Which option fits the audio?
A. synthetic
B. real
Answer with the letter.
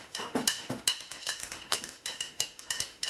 A